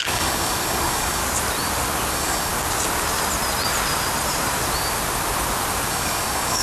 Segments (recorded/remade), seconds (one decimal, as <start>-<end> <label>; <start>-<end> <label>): 0.0-1.2 remade; 1.2-2.1 recorded; 2.1-2.5 remade; 2.5-5.9 recorded; 5.9-6.6 remade

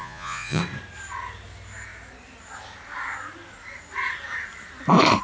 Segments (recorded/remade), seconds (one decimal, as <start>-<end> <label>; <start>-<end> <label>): 0.0-0.6 remade; 0.6-5.2 recorded

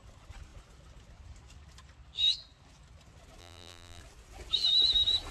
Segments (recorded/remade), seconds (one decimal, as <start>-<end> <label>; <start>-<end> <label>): 0.0-3.4 recorded; 3.4-4.0 remade; 4.0-5.3 recorded

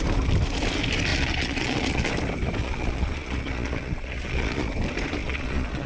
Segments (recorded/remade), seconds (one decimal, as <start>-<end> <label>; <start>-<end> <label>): 0.0-1.1 recorded; 1.1-2.1 remade; 2.1-2.6 recorded; 2.6-4.7 remade; 4.7-5.2 recorded; 5.2-5.9 remade

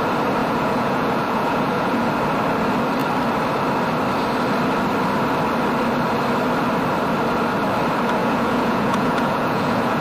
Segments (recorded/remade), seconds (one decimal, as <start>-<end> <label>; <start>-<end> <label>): 0.0-0.4 recorded; 0.4-2.1 remade; 2.1-8.2 recorded; 8.2-10.0 remade

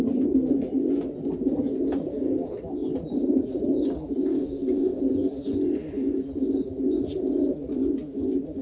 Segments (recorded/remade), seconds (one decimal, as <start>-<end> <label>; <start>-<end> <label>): 0.0-4.3 recorded; 4.3-5.0 remade; 5.0-8.6 recorded